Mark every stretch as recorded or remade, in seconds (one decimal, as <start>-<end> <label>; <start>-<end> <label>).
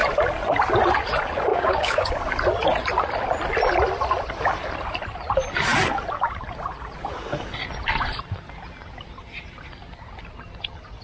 0.0-1.5 recorded; 1.5-2.1 remade; 2.1-11.0 recorded